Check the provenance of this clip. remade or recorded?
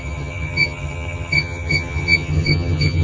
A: remade